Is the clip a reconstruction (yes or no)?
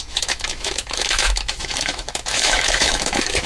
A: yes